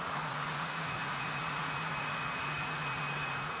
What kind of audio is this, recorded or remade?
remade